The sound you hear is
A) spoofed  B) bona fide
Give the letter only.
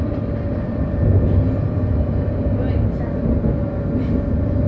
B